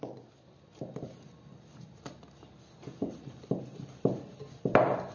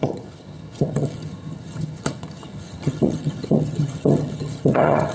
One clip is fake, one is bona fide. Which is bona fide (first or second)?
first